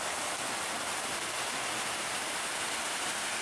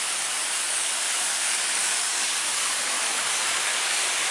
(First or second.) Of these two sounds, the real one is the first